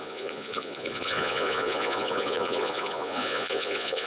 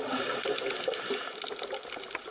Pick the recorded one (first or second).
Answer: second